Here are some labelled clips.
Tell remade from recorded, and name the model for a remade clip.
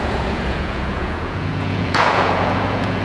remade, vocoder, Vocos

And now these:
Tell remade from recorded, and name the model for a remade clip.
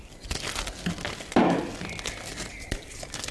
recorded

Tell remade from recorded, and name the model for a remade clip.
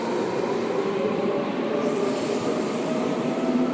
remade, vocoder, BigVGAN v2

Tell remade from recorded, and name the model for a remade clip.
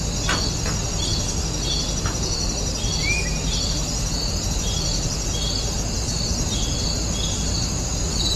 recorded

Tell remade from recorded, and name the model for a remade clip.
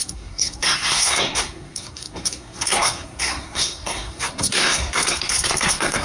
remade, codec, SNAC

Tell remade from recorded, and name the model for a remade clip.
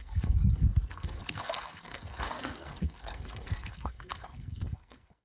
remade, codec, SNAC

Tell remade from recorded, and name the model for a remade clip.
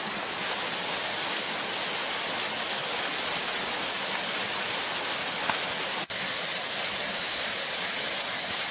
recorded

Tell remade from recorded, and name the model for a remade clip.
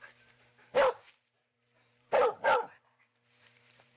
remade, vocoder, BigVGAN v2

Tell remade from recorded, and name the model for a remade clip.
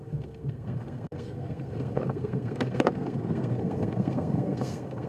remade, codec, SNAC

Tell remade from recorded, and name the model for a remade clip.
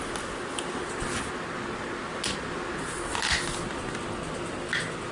recorded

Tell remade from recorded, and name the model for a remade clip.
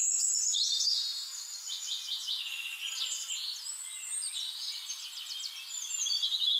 recorded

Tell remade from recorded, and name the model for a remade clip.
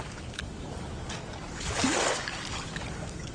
remade, codec, DAC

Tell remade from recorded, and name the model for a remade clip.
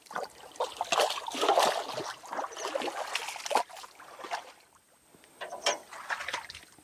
recorded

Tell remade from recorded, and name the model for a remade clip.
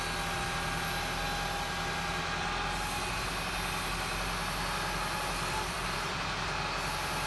recorded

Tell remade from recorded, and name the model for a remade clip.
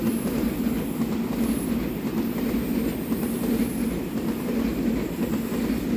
recorded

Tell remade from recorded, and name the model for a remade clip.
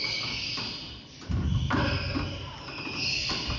recorded